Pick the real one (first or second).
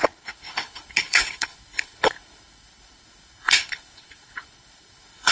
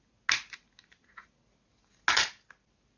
second